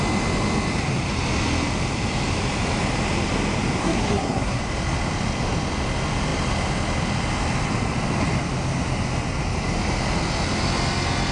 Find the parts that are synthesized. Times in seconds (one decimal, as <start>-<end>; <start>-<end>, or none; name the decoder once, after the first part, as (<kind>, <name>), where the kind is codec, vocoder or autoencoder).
3.8-4.6 (codec, SNAC)